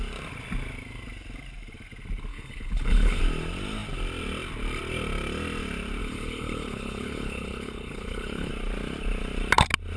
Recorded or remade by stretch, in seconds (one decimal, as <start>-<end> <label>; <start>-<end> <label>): 0.0-2.3 recorded; 2.3-3.2 remade; 3.2-6.0 recorded; 6.0-8.5 remade; 8.5-10.0 recorded